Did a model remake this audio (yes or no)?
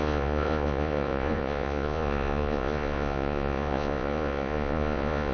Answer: yes